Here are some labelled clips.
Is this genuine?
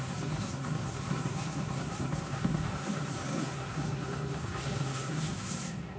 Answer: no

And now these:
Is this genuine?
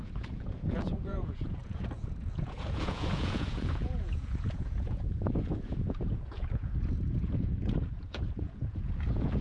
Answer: no